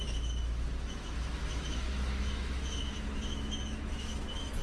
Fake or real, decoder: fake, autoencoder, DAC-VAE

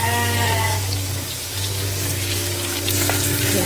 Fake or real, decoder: fake, codec, DAC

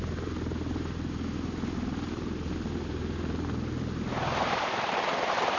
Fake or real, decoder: real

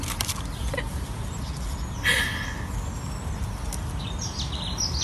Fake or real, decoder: real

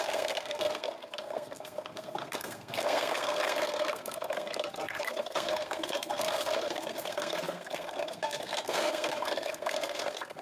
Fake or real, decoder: fake, codec, SNAC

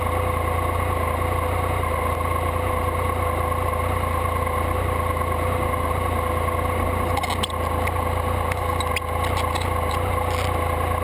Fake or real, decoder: real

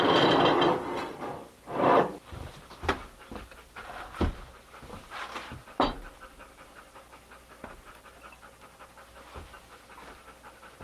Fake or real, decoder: real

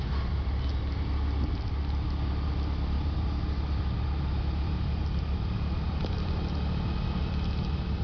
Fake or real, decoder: real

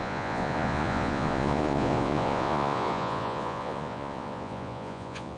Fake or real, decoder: fake, vocoder, Vocos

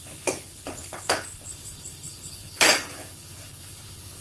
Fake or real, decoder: fake, codec, HILCodec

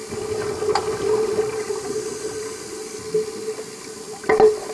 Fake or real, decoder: real